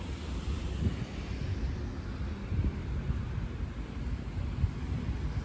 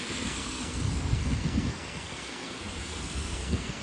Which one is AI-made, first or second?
second